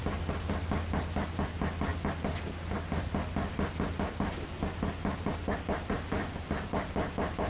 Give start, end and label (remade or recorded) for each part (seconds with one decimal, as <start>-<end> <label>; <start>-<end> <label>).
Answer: 0.0-7.5 recorded